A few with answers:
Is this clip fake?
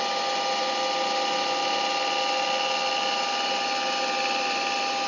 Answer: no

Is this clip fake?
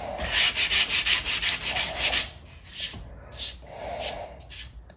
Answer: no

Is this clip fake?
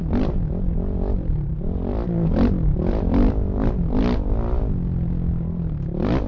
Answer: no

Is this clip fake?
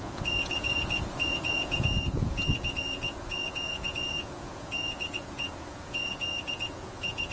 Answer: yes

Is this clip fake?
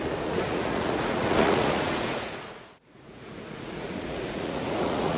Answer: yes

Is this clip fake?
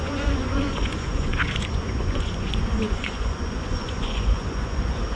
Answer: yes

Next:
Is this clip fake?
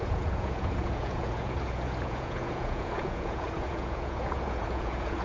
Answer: yes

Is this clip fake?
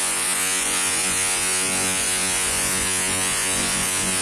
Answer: yes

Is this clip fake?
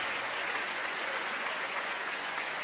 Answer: yes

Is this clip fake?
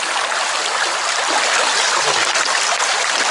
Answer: no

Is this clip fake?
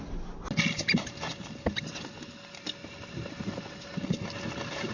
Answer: no